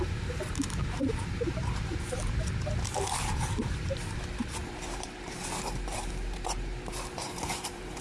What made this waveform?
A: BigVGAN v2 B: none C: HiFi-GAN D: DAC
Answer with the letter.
A